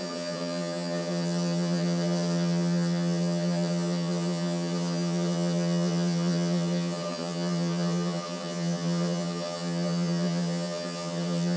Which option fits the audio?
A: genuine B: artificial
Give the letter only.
B